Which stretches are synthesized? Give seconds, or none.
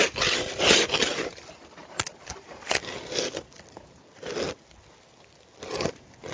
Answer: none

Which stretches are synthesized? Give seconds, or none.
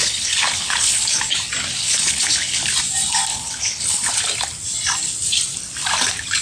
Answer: 0.0-1.0 (codec, HILCodec); 1.8-2.6; 3.3-4.2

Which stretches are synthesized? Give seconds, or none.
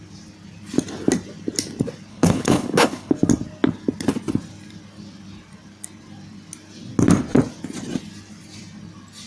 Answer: 2.1-3.1 (codec, HILCodec)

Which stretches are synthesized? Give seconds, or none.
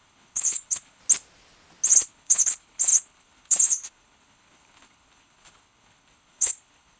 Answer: 0.0-1.0 (codec, HILCodec); 1.9-7.0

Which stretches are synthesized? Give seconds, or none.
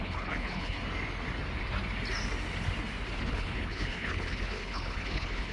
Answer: 0.0-0.8 (codec, HILCodec); 3.2-5.5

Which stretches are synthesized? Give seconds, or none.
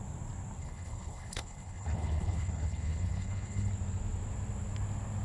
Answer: 0.6-3.7 (codec, HILCodec)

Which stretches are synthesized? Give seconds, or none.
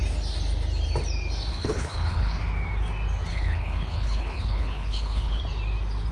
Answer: 1.5-2.4 (codec, HILCodec); 3.3-5.4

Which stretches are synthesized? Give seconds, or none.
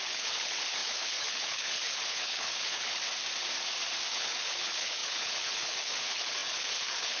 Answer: 0.0-3.0 (codec, HILCodec); 4.1-7.2